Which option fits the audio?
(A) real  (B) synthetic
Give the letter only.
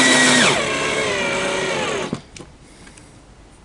A